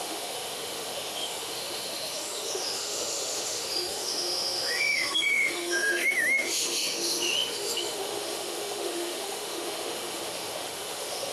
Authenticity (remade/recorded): remade